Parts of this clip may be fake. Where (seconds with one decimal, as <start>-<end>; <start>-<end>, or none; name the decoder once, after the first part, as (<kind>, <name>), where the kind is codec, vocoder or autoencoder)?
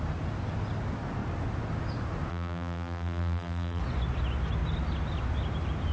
2.3-3.8 (vocoder, BigVGAN v2)